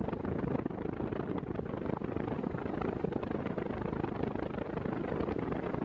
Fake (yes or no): no